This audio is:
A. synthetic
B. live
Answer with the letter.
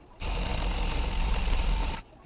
B